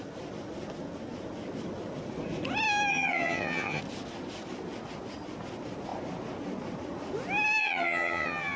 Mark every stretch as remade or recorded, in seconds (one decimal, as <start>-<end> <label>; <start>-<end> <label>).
0.0-2.9 recorded; 2.9-3.8 remade; 3.8-7.6 recorded; 7.6-8.6 remade